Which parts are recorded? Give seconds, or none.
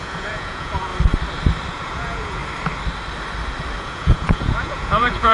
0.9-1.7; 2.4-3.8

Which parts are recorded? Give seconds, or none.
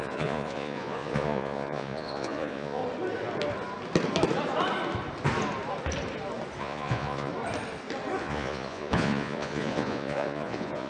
2.8-6.6; 7.3-8.2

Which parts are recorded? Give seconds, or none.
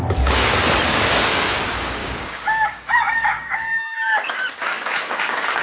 0.0-0.9; 1.6-2.0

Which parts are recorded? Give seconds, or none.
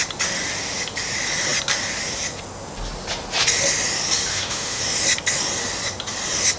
0.0-4.3; 4.8-6.6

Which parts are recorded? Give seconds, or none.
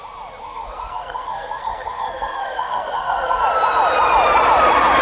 0.0-0.4; 3.4-5.0